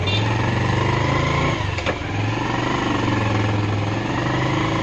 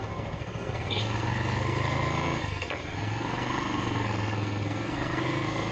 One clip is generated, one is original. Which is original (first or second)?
first